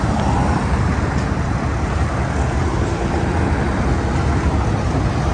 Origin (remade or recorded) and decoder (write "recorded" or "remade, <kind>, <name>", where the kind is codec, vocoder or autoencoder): recorded